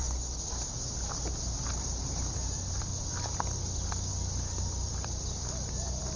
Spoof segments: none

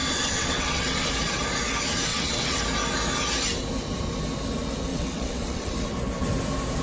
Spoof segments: 0.0-1.1; 2.1-2.6; 4.9-5.7